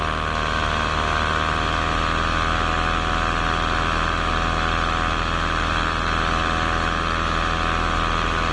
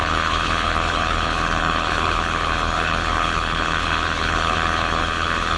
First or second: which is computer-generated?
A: second